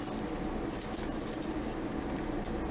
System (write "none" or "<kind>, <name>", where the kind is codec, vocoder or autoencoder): none